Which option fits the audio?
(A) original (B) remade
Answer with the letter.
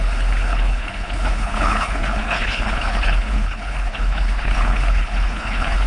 B